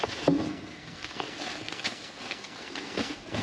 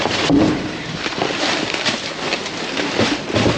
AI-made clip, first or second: first